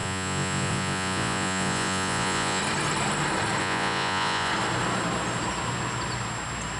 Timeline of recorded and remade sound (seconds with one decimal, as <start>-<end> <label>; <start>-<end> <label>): 0.0-2.6 remade; 2.6-3.6 recorded; 3.6-4.5 remade; 4.5-6.8 recorded